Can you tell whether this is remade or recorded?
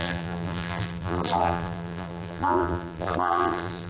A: remade